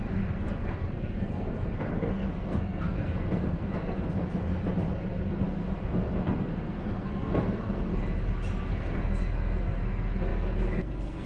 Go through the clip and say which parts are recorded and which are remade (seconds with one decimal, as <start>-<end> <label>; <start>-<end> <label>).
0.0-4.5 remade; 4.5-5.3 recorded; 5.3-7.9 remade; 7.9-8.7 recorded; 8.7-11.3 remade